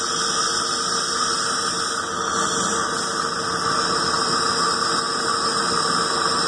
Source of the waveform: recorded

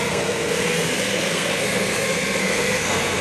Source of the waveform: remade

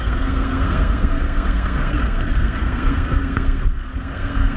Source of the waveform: remade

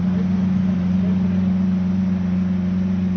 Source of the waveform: recorded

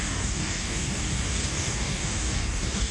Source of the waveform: remade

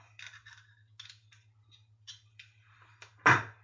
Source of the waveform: recorded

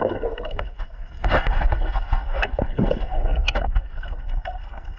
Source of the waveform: remade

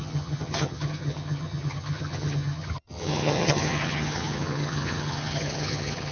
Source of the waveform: remade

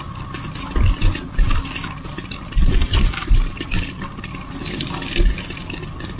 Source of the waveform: recorded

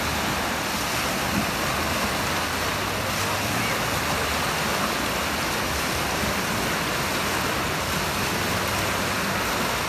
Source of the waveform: recorded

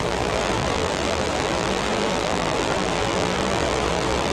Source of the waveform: remade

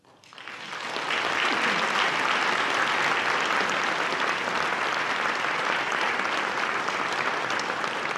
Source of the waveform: recorded